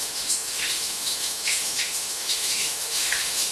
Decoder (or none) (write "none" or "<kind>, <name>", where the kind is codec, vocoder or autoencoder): autoencoder, DAC-VAE